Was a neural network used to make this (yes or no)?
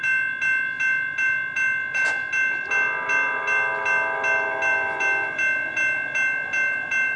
no